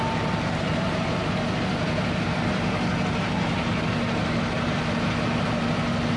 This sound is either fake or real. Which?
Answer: real